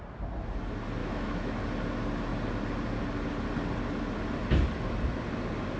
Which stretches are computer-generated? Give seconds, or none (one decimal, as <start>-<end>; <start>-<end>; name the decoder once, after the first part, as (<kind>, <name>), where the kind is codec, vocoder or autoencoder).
1.0-1.6 (autoencoder, DAC-VAE)